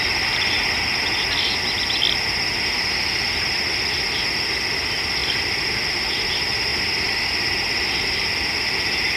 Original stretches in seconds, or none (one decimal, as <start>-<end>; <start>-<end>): 0.0-5.2; 6.3-6.7; 7.3-9.2